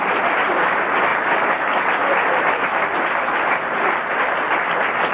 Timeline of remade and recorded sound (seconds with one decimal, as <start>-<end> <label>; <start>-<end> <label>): 0.0-5.1 recorded